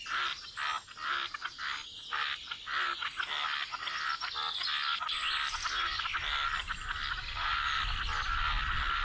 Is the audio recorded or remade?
recorded